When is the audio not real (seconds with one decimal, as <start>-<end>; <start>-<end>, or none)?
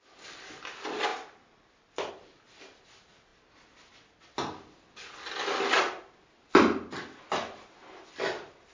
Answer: none